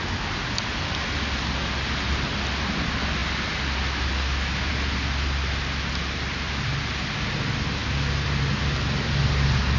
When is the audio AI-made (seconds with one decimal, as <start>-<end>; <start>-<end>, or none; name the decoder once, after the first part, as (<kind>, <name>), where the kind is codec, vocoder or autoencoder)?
none